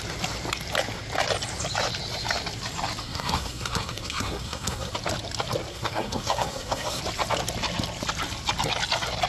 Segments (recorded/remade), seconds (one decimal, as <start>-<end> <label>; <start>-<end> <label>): 0.0-3.0 recorded; 3.0-4.9 remade; 4.9-5.7 recorded; 5.7-7.0 remade; 7.0-9.3 recorded